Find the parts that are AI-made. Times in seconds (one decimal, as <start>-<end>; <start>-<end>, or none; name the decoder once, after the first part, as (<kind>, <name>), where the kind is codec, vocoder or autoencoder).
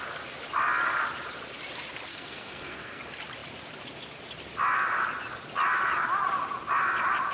2.1-3.0 (codec, SNAC)